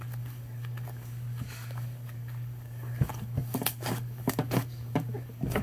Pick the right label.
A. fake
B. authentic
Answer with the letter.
A